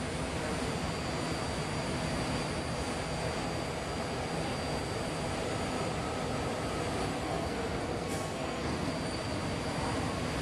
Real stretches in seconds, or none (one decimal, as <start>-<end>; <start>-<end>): 0.0-7.1; 8.9-10.4